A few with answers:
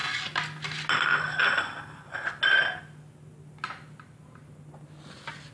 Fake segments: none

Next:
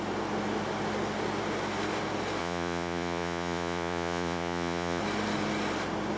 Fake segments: 2.4-5.0 (vocoder, Vocos)